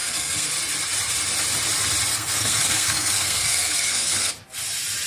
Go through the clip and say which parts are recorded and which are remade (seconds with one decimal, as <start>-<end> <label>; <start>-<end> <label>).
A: 0.0-0.5 remade; 0.5-2.1 recorded; 2.1-4.3 remade; 4.3-5.1 recorded